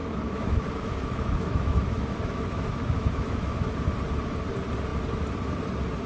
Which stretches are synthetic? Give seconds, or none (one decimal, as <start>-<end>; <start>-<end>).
0.0-3.7